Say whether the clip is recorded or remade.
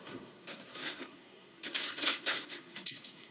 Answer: remade